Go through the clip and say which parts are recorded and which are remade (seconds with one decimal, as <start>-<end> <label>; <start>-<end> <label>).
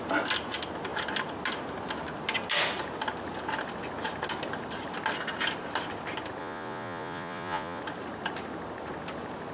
0.0-6.4 recorded; 6.4-7.8 remade; 7.8-9.5 recorded